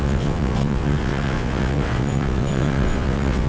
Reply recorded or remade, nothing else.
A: remade